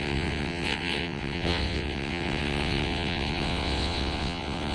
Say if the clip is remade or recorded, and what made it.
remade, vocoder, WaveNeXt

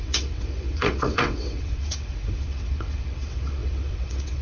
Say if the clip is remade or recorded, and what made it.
remade, vocoder, WaveNeXt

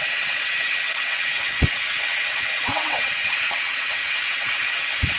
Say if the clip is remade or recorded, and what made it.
remade, vocoder, WaveNeXt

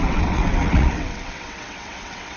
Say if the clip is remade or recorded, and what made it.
remade, vocoder, WaveNeXt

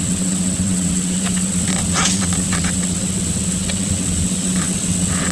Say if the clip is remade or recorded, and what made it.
remade, vocoder, WaveNeXt